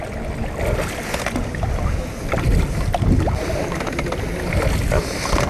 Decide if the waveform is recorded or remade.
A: recorded